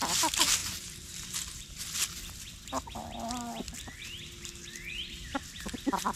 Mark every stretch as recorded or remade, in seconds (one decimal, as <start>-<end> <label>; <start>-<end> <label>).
0.0-0.6 recorded; 0.6-1.8 remade; 1.8-6.2 recorded